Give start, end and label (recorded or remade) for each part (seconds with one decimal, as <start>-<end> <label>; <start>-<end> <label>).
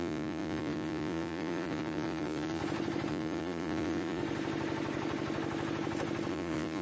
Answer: 0.0-2.6 remade; 2.6-3.1 recorded; 3.1-4.2 remade; 4.2-6.3 recorded; 6.3-6.8 remade